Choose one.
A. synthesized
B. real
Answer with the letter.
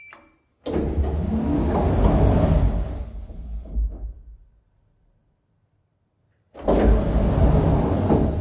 B